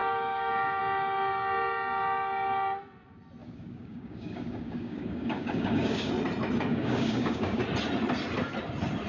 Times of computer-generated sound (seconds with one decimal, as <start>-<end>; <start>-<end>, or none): 0.0-0.8; 3.4-6.1; 6.7-7.6